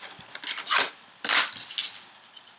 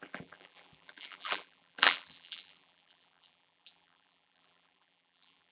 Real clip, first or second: first